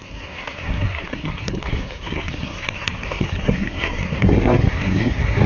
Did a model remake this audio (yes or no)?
yes